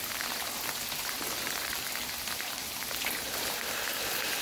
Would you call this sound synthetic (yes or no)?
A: no